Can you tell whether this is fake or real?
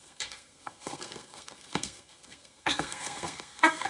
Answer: fake